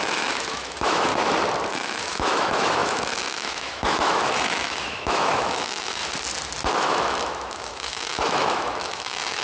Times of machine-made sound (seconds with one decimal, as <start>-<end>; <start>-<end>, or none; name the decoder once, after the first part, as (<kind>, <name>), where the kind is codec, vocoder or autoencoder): 0.0-1.1 (autoencoder, DAC-VAE); 1.7-6.0; 6.7-9.4